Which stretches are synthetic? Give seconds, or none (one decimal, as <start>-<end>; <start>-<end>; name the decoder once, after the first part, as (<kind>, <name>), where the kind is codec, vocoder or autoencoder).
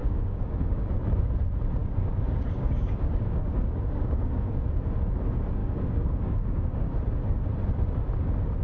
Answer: 0.0-0.9 (codec, DAC); 1.8-4.5; 5.6-7.0